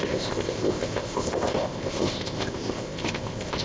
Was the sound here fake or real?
fake